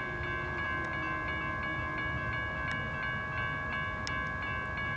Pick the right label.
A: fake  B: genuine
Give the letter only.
B